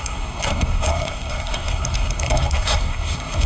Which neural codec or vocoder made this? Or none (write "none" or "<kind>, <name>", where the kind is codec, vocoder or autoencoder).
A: codec, SNAC